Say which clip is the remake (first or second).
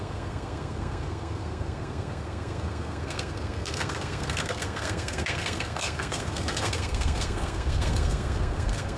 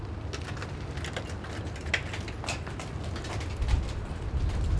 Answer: first